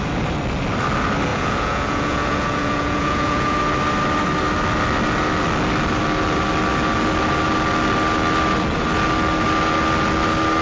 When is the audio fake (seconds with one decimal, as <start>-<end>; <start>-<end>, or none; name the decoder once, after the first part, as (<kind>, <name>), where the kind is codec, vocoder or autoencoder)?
1.3-3.6 (vocoder, Vocos)